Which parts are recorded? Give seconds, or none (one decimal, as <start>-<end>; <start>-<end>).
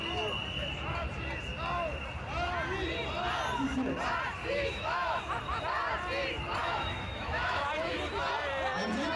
0.0-4.4; 5.2-6.6; 7.7-9.2